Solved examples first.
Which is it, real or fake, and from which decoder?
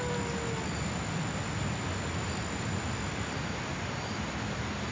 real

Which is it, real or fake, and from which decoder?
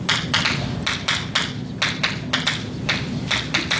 real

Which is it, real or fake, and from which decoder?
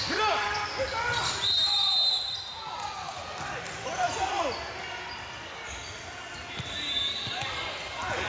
real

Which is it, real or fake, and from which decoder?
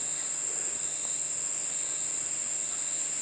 real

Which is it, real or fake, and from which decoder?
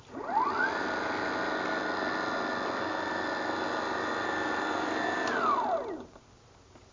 real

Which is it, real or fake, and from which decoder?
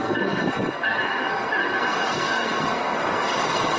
fake, codec, SNAC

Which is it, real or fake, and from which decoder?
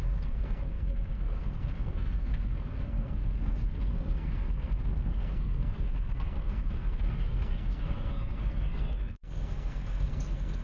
fake, codec, SNAC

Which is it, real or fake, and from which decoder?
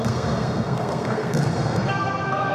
fake, codec, SNAC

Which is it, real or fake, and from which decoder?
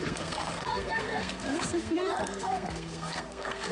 fake, codec, SNAC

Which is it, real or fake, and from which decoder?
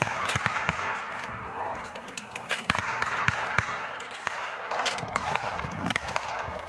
fake, codec, SNAC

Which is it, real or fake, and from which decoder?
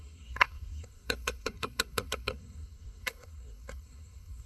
fake, codec, SNAC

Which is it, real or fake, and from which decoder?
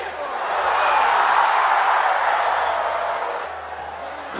real